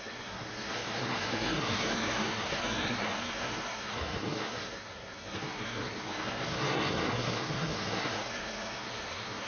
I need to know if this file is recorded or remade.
remade